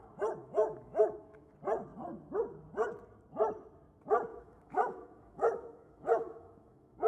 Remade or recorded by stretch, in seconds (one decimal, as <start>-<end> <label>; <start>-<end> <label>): 0.0-0.4 recorded; 0.4-1.5 remade; 1.5-4.3 recorded; 4.3-7.1 remade